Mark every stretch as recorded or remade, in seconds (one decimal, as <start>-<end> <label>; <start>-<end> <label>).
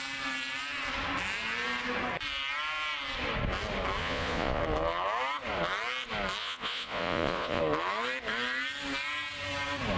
0.0-4.0 recorded; 4.0-4.6 remade; 4.6-6.4 recorded; 6.4-7.6 remade; 7.6-10.0 recorded